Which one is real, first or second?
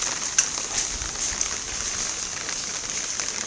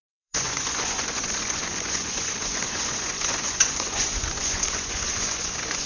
first